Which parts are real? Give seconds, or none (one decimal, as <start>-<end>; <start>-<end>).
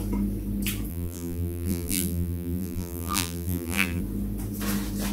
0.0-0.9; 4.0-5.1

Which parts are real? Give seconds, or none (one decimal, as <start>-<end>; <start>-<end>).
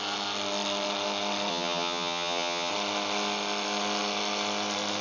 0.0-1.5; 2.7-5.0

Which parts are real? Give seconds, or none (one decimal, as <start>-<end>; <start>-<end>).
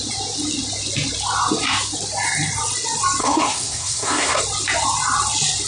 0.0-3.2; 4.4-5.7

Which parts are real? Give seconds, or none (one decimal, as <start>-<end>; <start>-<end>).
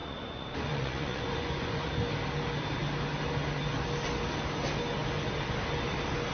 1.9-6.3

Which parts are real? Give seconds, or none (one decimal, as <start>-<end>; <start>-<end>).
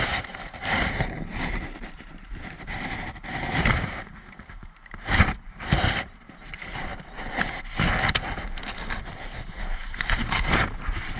6.9-9.6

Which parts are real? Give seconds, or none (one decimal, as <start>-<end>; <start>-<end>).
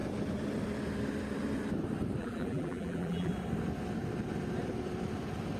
0.0-2.2; 3.3-5.6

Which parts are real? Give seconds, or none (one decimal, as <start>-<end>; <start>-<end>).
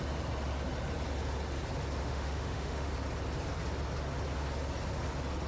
0.0-2.0; 2.9-5.5